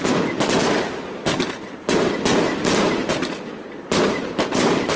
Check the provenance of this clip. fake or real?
real